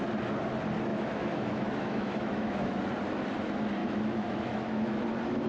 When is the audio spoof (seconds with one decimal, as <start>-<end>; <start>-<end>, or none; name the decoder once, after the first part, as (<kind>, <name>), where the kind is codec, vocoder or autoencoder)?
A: 0.9-2.8 (autoencoder, DAC-VAE); 3.8-5.0